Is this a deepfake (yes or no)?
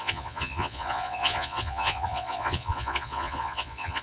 yes